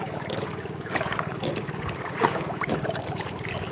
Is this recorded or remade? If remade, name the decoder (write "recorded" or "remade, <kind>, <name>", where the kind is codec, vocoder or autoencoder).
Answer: remade, codec, DAC